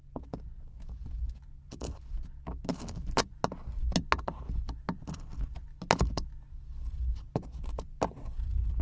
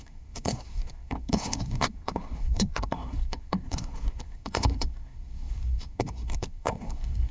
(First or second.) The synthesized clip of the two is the second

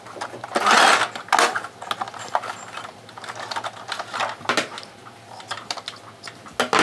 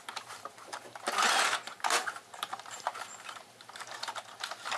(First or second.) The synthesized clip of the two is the second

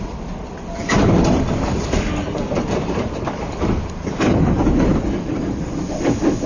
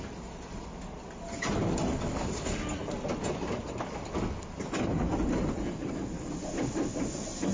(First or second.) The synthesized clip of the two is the first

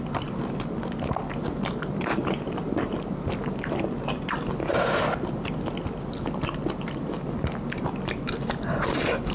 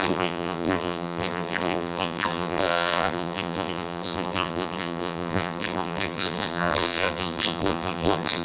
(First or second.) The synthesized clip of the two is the second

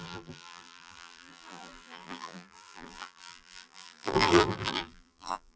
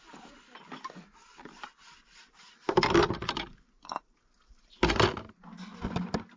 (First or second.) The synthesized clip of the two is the first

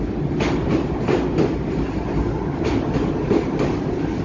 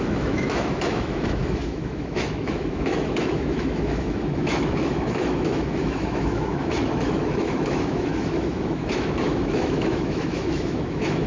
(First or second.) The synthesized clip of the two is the second